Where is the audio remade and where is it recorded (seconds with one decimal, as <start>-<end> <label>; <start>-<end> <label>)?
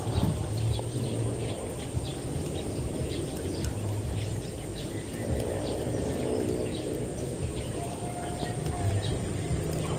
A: 0.0-6.7 recorded; 6.7-8.9 remade; 8.9-10.0 recorded